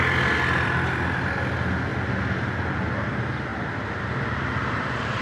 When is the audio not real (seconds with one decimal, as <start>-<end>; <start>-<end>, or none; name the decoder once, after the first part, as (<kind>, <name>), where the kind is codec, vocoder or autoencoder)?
none